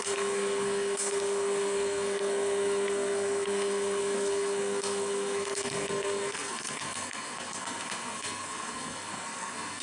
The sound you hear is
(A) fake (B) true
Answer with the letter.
A